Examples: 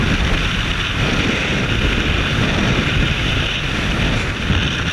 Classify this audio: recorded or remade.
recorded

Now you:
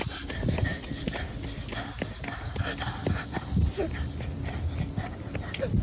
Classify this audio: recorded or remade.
recorded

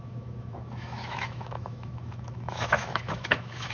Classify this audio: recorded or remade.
remade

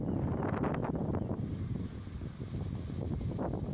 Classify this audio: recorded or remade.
recorded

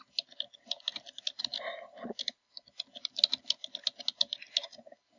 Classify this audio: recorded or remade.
recorded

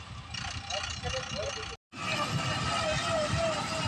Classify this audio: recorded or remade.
recorded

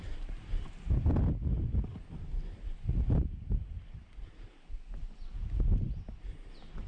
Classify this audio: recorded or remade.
recorded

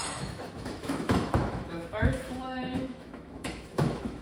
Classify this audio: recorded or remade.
remade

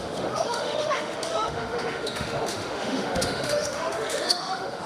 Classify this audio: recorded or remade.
remade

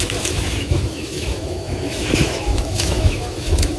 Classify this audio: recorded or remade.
remade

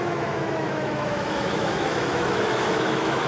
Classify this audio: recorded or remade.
remade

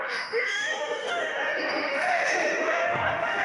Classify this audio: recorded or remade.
remade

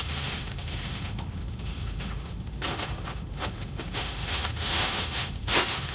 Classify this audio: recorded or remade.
remade